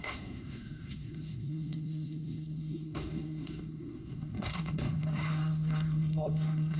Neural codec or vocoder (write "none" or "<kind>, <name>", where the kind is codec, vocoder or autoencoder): codec, SNAC